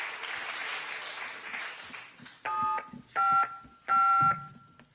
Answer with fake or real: real